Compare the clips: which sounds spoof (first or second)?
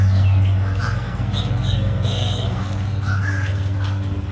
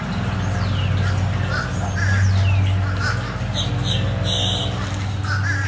first